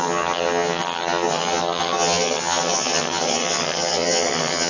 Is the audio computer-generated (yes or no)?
yes